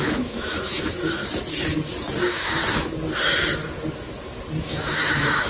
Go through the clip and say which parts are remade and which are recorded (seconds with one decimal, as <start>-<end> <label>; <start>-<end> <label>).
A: 0.0-1.2 remade; 1.2-2.2 recorded; 2.2-2.6 remade; 2.6-4.6 recorded; 4.6-5.5 remade

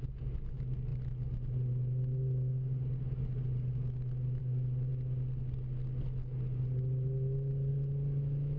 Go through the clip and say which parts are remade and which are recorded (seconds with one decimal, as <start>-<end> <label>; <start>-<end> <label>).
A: 0.0-8.6 recorded

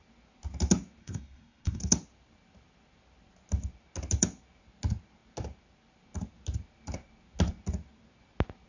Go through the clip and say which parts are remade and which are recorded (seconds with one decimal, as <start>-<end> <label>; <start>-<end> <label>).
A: 0.0-1.0 recorded; 1.0-1.8 remade; 1.8-8.7 recorded